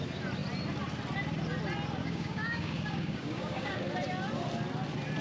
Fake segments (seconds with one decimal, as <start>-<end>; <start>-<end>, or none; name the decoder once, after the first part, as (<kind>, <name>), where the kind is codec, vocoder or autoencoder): 2.0-3.8 (codec, DAC)